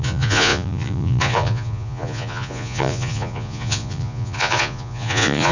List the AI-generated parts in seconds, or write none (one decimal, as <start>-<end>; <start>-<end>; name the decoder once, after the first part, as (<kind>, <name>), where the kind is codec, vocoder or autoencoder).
0.0-5.5 (vocoder, Vocos)